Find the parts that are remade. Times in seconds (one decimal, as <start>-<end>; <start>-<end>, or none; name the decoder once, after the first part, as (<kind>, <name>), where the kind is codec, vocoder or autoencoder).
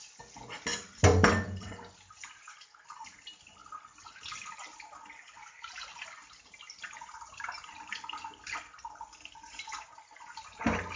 none